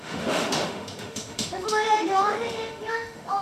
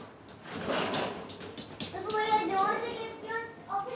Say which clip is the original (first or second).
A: second